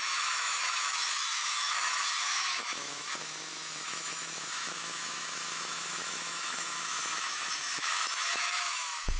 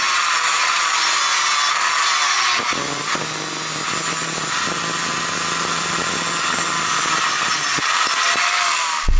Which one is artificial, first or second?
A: first